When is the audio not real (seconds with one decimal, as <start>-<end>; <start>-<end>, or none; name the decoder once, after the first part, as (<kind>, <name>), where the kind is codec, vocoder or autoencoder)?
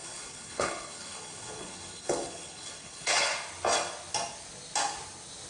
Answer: 0.0-3.3 (codec, HILCodec)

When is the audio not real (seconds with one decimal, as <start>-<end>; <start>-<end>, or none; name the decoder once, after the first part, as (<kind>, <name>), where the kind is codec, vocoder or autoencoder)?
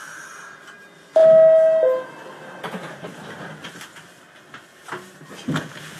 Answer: none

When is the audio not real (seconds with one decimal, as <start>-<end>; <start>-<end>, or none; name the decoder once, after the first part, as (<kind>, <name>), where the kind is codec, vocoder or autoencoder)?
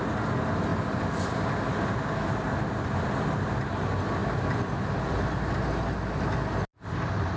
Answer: none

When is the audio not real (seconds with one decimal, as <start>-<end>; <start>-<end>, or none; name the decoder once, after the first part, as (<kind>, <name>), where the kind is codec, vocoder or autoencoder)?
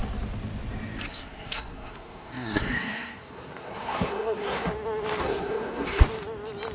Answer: 1.1-4.7 (codec, SNAC); 5.2-6.0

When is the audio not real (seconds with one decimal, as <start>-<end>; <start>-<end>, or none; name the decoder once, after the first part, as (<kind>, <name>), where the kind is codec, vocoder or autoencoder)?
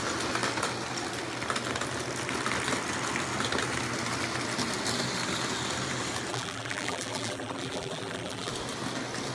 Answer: 6.3-8.5 (vocoder, BigVGAN v2)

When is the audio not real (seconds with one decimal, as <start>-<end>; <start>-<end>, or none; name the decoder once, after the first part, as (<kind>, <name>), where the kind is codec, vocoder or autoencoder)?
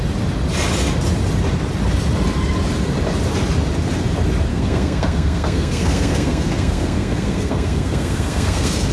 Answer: 4.5-8.9 (codec, SNAC)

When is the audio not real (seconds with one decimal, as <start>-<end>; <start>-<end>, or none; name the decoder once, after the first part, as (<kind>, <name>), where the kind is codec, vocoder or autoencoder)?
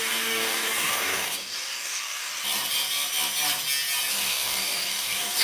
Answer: 0.0-2.3 (codec, DAC); 4.1-5.4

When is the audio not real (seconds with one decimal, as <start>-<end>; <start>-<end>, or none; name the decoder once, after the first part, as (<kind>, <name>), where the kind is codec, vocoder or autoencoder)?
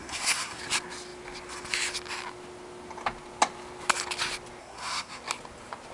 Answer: 0.0-0.6 (codec, SNAC); 4.6-5.2